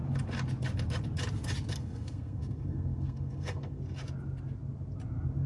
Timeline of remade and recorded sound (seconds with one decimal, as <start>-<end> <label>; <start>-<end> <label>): 0.0-1.7 recorded; 1.7-3.8 remade; 3.8-5.5 recorded